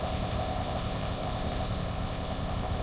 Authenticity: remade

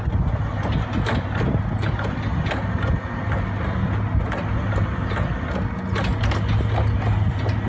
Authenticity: recorded